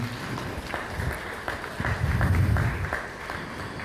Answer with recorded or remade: recorded